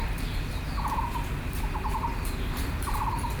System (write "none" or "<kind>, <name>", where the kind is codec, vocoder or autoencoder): none